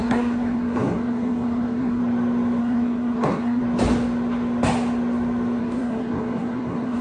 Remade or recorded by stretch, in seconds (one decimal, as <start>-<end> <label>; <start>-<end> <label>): 0.0-2.0 remade; 2.0-2.6 recorded; 2.6-3.6 remade; 3.6-5.6 recorded; 5.6-7.0 remade